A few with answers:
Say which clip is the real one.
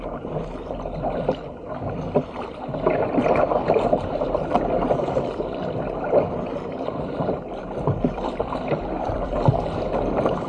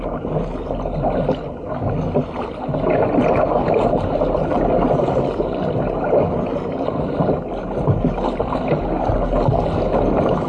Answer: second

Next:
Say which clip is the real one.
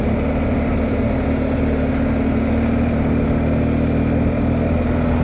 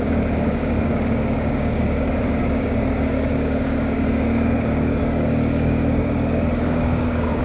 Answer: first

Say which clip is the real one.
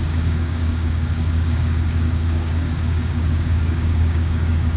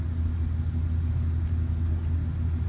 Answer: second